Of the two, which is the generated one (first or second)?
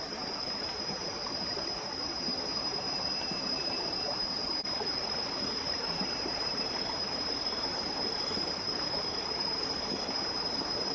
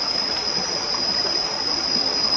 first